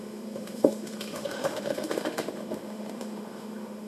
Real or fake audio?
fake